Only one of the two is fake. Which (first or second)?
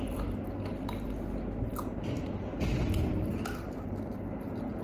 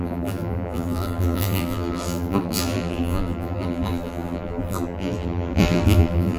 second